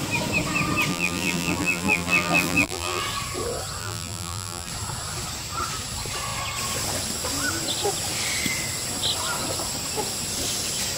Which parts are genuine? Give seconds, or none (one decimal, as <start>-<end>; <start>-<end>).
0.0-0.9; 3.0-3.8; 4.7-11.0